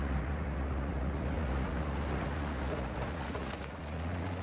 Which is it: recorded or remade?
remade